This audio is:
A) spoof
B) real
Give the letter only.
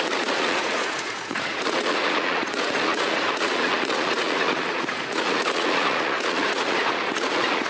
A